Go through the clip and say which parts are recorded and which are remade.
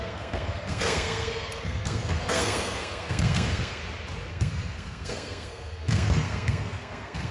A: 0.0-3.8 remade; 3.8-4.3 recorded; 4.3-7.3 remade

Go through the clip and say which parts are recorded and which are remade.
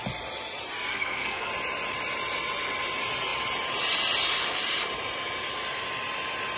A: 0.0-0.9 recorded; 0.9-1.5 remade; 1.5-6.6 recorded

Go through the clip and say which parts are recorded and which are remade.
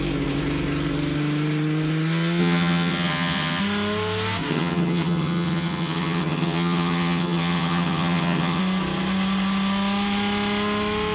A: 0.0-2.4 recorded; 2.4-3.6 remade; 3.6-4.5 recorded; 4.5-8.6 remade; 8.6-11.1 recorded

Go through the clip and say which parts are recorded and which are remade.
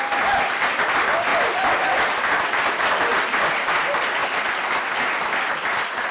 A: 0.0-6.1 recorded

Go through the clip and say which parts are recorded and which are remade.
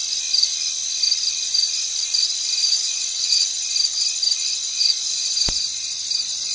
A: 0.0-2.6 recorded; 2.6-3.5 remade; 3.5-6.5 recorded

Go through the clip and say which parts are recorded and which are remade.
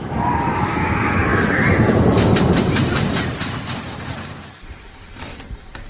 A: 0.0-5.9 remade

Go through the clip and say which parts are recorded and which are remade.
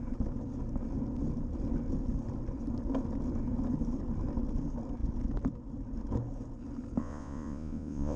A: 0.0-7.0 recorded; 7.0-8.2 remade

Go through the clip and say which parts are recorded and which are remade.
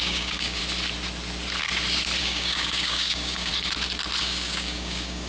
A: 0.0-0.6 remade; 0.6-2.2 recorded; 2.2-3.5 remade; 3.5-4.2 recorded; 4.2-5.3 remade